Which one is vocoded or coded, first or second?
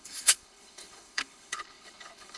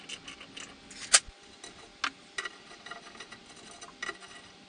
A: first